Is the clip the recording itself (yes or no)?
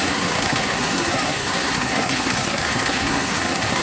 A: no